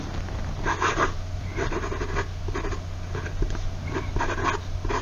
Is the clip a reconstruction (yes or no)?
no